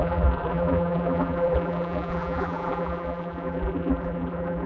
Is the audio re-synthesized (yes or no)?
yes